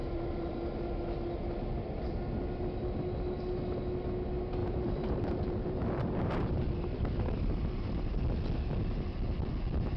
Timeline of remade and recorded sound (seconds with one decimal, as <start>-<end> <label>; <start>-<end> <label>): 0.0-0.6 remade; 0.6-4.6 recorded; 4.6-8.2 remade; 8.2-10.0 recorded